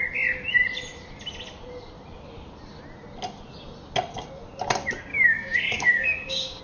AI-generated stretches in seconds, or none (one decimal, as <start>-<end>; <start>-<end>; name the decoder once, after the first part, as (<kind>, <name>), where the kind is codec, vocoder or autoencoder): 5.1-6.6 (codec, DAC)